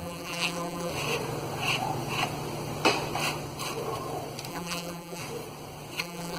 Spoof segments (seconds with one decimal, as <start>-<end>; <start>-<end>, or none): 0.0-0.9; 4.5-5.2; 6.0-6.4